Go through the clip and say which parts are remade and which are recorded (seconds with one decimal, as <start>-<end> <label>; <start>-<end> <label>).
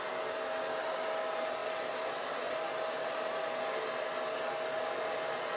0.0-5.6 recorded